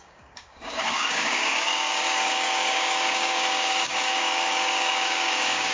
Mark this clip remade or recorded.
remade